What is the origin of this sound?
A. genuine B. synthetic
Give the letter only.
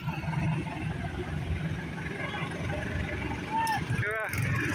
A